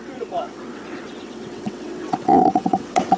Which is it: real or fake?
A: fake